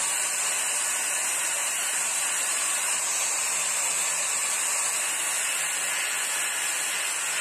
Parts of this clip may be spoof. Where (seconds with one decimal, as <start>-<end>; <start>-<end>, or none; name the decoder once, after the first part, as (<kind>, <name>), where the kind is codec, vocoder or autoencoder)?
1.6-4.6 (vocoder, BigVGAN v2)